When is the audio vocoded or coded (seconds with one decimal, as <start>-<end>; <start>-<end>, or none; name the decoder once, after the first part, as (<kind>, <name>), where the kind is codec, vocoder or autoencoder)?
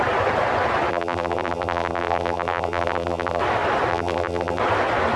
0.9-3.4 (vocoder, BigVGAN v2); 3.9-4.6